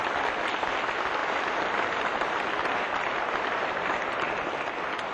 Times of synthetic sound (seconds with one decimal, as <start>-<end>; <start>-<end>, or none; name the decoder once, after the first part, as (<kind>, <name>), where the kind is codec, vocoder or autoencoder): none